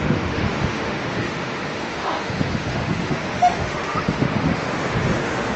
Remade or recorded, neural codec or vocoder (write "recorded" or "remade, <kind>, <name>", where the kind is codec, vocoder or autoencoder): remade, autoencoder, DAC-VAE